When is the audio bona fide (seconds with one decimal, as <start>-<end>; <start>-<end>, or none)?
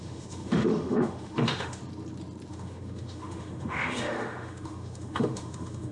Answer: 1.8-2.5